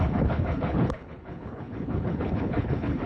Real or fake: fake